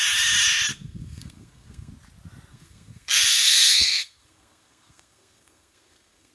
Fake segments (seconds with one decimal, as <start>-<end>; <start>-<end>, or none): 0.7-1.9; 2.5-6.3